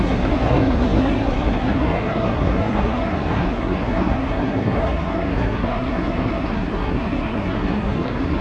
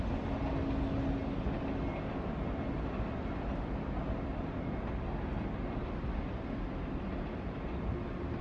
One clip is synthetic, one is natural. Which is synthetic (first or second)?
first